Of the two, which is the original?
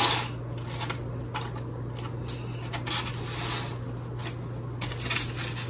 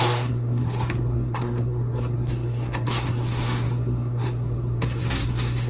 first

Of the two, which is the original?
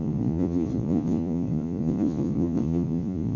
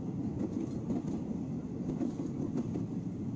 second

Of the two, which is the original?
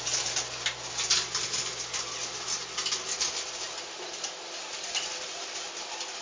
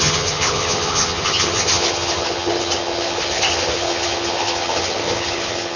first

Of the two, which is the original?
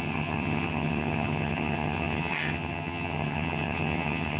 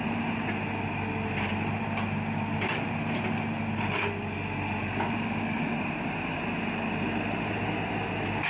second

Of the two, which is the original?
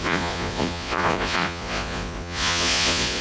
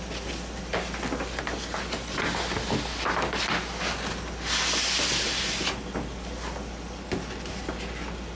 second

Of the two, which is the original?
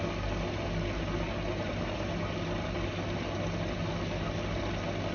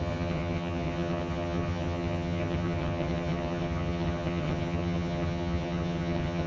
first